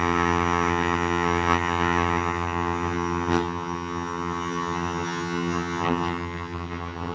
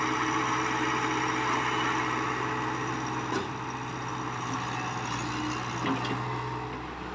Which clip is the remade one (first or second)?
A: first